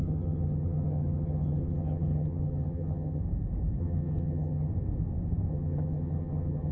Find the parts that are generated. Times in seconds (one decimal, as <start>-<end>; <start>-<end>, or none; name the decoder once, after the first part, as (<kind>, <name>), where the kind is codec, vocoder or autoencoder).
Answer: 0.0-3.2 (vocoder, HiFi-GAN); 3.8-4.7; 5.5-6.7

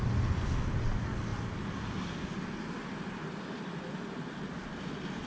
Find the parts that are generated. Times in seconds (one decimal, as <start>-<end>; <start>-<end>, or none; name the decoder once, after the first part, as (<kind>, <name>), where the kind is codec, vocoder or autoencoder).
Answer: none

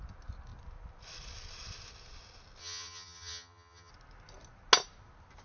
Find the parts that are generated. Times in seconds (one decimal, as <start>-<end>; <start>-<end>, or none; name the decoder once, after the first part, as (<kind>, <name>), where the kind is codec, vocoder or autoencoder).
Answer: 2.6-3.9 (vocoder, HiFi-GAN)

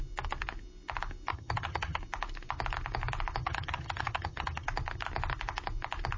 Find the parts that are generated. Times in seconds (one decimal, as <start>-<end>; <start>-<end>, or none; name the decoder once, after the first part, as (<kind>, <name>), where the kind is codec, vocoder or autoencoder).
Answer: 1.3-2.0 (vocoder, HiFi-GAN); 3.4-4.7

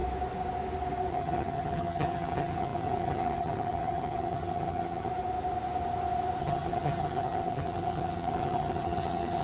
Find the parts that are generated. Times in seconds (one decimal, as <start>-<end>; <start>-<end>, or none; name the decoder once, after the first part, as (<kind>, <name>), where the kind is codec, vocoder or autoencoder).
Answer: 1.1-5.1 (vocoder, HiFi-GAN); 6.4-9.4